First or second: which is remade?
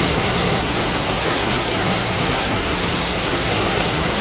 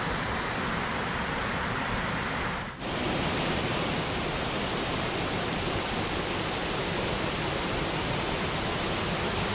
first